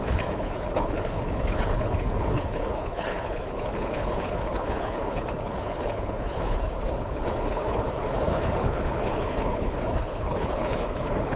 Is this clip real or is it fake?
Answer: fake